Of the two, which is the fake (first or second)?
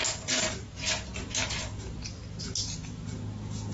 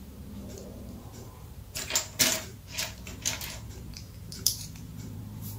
second